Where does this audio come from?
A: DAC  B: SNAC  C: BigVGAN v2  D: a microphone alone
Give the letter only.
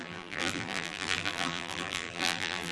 C